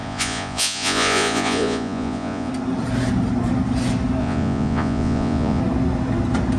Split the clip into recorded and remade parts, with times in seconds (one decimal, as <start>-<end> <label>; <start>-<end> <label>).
0.0-2.5 remade; 2.5-4.2 recorded; 4.2-5.6 remade; 5.6-6.6 recorded